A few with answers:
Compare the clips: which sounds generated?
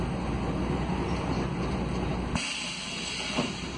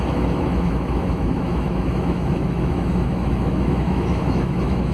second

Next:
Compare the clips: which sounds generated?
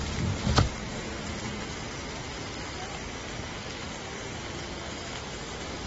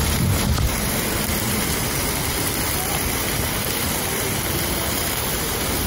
second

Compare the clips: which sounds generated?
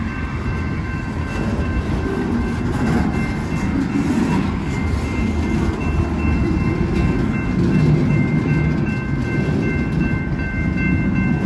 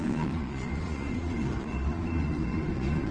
second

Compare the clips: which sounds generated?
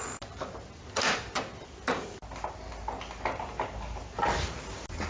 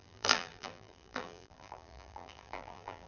second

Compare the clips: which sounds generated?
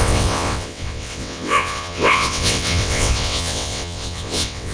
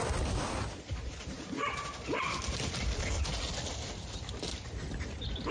first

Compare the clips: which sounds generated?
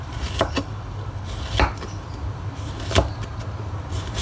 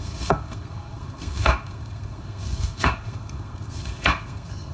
second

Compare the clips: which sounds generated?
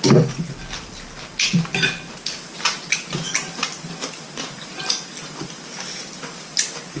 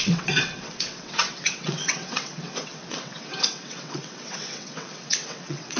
second